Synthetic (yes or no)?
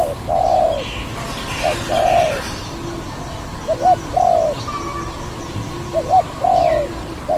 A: no